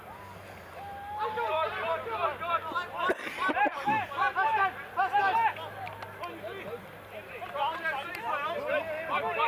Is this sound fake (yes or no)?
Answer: no